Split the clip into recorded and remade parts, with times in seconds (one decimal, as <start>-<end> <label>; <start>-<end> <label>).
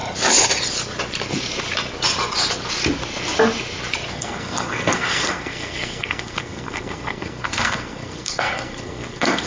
0.0-4.1 recorded; 4.1-9.5 remade